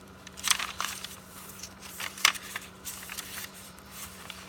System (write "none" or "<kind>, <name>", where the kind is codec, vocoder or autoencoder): vocoder, BigVGAN v2